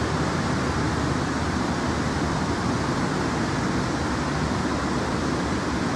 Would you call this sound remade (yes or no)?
yes